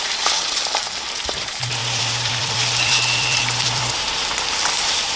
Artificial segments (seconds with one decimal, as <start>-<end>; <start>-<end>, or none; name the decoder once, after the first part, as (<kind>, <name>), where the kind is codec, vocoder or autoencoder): 1.8-4.7 (vocoder, BigVGAN v2)